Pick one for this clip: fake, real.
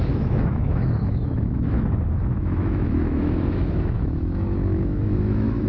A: fake